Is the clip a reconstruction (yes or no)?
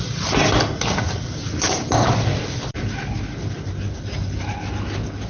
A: no